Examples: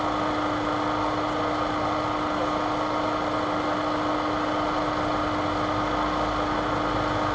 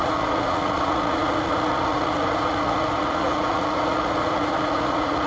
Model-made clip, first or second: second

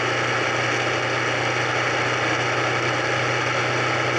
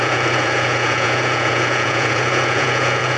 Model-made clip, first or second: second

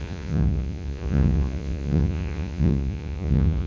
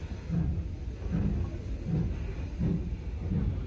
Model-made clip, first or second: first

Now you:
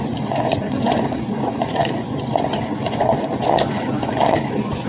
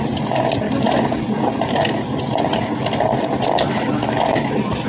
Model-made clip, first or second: first